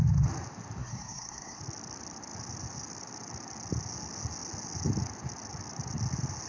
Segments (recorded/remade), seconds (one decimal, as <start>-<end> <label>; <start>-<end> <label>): 0.0-0.8 recorded; 0.8-1.6 remade; 1.6-6.5 recorded